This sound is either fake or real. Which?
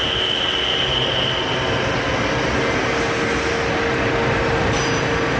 real